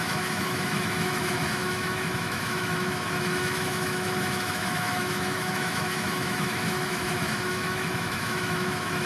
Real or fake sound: fake